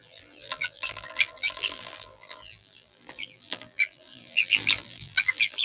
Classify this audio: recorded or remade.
remade